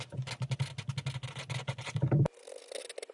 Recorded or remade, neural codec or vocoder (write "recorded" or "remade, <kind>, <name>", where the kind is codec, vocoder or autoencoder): recorded